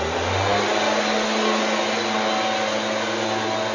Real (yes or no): yes